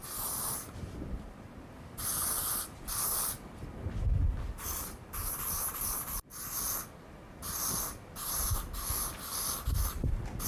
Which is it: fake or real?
fake